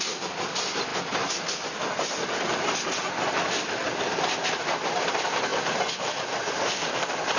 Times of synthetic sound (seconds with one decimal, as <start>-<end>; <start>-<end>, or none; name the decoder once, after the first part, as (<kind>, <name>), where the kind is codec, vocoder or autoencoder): none